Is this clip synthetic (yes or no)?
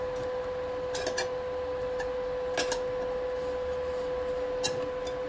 no